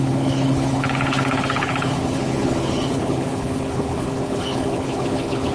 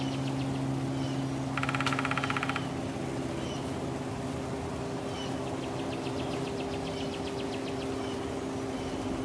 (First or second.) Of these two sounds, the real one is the second